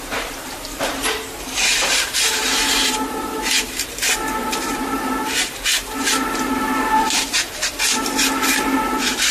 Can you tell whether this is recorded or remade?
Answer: remade